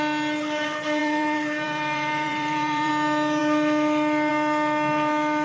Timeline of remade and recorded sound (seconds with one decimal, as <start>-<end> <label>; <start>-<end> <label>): 0.0-1.0 recorded; 1.0-2.9 remade; 2.9-5.4 recorded